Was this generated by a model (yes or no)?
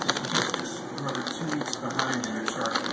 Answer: no